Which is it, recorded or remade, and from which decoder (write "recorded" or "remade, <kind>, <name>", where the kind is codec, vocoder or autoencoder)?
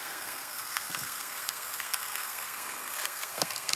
remade, codec, SNAC